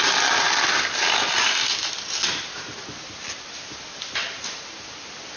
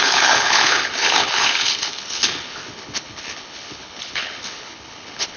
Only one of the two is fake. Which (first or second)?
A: second